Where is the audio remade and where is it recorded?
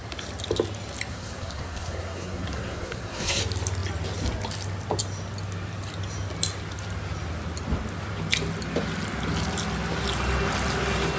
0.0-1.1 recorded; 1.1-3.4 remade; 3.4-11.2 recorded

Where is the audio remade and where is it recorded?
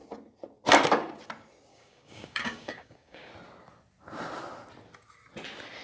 0.0-1.7 recorded; 1.7-3.3 remade; 3.3-5.8 recorded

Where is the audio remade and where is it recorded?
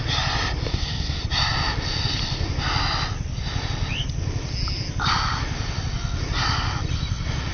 0.0-0.7 recorded; 0.7-1.2 remade; 1.2-7.5 recorded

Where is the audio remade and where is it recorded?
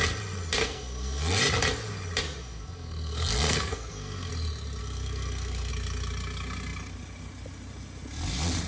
0.0-0.6 recorded; 0.6-1.4 remade; 1.4-2.4 recorded; 2.4-4.3 remade; 4.3-4.8 recorded; 4.8-5.7 remade; 5.7-8.7 recorded